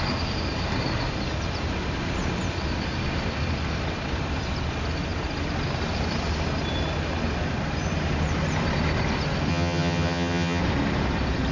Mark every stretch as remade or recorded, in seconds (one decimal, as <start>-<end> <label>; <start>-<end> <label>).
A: 0.0-9.5 recorded; 9.5-10.6 remade; 10.6-11.5 recorded